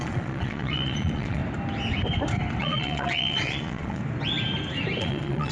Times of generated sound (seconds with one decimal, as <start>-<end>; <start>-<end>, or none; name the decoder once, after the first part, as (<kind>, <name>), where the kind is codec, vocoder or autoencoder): 0.0-1.4 (vocoder, Vocos); 2.6-4.0; 5.0-5.5